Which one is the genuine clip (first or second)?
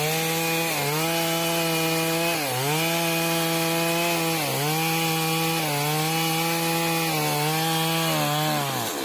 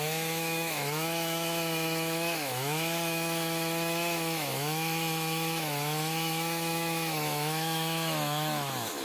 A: first